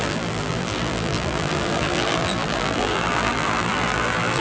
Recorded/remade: remade